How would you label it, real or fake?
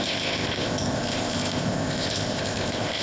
fake